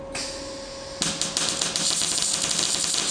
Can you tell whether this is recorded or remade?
recorded